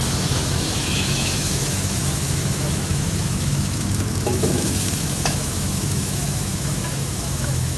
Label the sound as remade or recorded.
remade